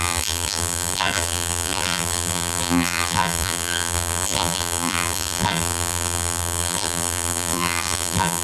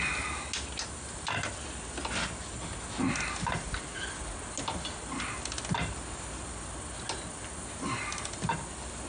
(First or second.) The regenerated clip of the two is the first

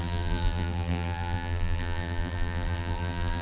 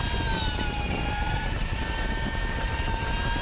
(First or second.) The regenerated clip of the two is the first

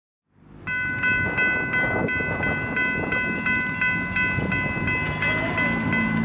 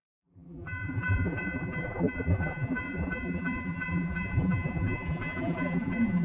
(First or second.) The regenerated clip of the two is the second